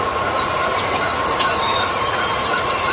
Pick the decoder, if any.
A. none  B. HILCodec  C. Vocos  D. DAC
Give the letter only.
C